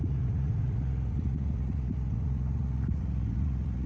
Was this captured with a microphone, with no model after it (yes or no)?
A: no